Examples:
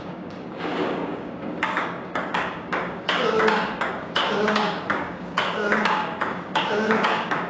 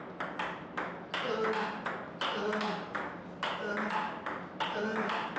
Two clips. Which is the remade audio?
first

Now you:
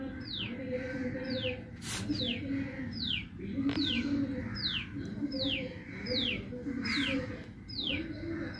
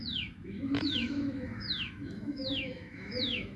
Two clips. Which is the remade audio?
second